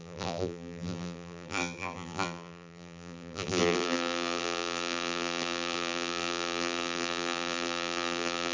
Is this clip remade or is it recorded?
remade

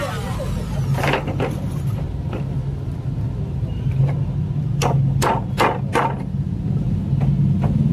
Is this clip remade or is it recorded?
recorded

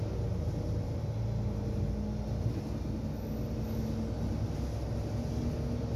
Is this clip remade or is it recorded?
recorded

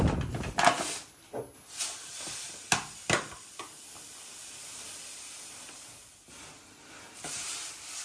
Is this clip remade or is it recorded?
recorded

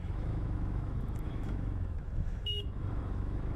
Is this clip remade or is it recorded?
remade